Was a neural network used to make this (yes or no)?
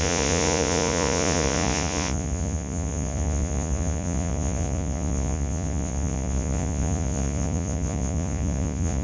yes